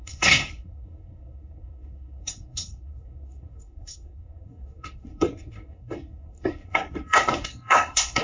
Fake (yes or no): yes